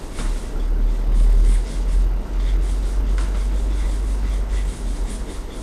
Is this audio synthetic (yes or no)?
yes